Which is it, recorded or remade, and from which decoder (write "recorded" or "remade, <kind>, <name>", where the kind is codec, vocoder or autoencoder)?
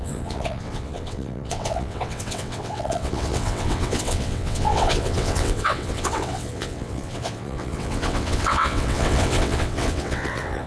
remade, vocoder, WaveNeXt